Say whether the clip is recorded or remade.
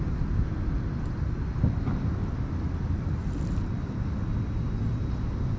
recorded